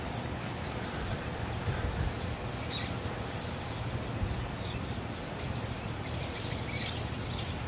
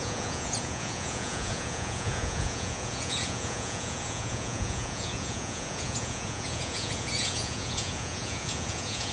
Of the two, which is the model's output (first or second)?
second